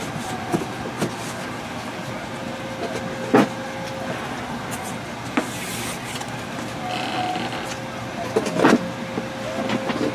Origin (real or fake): real